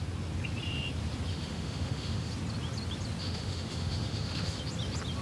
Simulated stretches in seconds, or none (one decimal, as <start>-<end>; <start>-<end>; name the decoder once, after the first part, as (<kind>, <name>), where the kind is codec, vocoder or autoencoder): 1.3-2.3 (autoencoder, DAC-VAE); 3.2-4.6